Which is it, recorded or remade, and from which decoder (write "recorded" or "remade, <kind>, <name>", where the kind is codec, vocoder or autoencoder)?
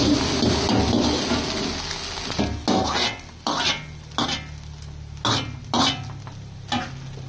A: recorded